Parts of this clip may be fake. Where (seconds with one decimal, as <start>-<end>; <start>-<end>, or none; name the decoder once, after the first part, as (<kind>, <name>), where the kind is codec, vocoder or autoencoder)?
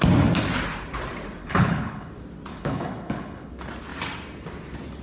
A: 1.4-2.1 (codec, HILCodec); 2.5-3.5